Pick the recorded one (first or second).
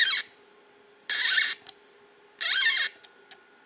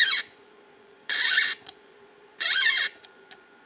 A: first